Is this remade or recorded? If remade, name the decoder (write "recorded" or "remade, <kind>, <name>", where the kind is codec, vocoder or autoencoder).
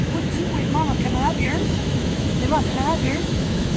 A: remade, autoencoder, DAC-VAE